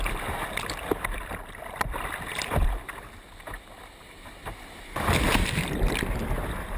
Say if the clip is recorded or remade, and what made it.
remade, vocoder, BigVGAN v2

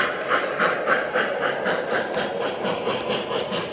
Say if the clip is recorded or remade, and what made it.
recorded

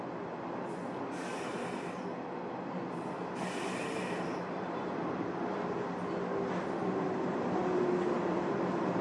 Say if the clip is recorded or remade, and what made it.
recorded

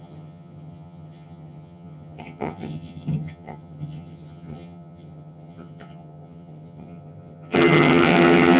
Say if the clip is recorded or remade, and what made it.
remade, vocoder, HiFi-GAN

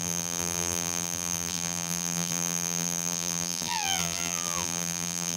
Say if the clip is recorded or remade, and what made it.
remade, vocoder, BigVGAN v2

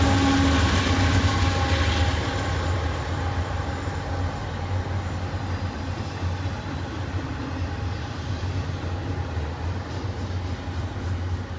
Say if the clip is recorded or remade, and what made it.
recorded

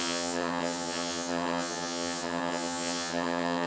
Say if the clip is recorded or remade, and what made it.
remade, vocoder, HiFi-GAN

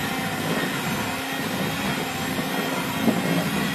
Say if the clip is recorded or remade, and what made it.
recorded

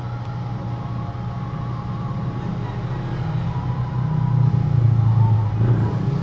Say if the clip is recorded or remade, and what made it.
recorded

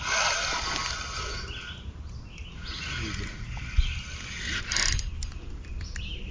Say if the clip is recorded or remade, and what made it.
recorded